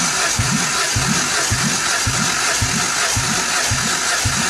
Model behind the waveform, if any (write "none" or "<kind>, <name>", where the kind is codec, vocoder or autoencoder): none